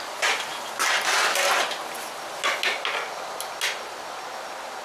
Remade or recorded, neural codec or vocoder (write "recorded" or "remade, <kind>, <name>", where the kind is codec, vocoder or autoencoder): recorded